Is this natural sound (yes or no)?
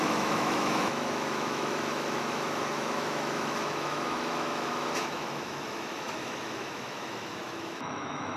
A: no